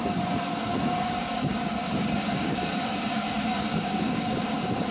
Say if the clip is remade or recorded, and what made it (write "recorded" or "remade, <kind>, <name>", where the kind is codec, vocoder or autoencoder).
remade, codec, DAC